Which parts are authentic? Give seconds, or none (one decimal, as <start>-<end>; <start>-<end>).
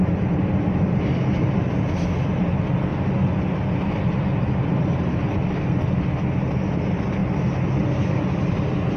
0.0-9.0